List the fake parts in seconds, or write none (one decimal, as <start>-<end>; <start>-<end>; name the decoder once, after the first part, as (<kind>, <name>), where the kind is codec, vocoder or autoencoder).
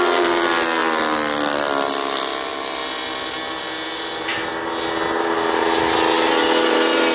none